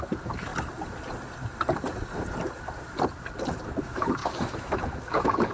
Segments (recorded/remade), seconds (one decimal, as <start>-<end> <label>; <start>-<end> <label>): 0.0-0.5 remade; 0.5-3.8 recorded; 3.8-5.5 remade